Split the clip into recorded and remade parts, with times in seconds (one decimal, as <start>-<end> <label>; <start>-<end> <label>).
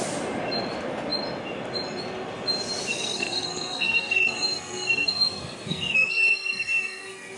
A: 0.0-2.9 recorded; 2.9-7.4 remade